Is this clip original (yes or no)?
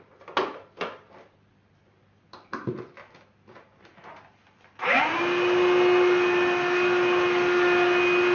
yes